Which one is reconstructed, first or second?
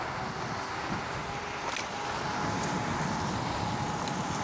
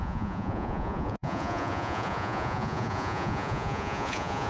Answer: second